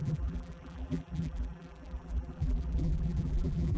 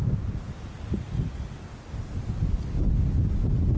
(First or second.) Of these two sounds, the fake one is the first